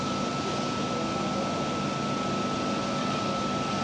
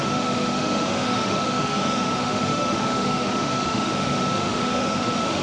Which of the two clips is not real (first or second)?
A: second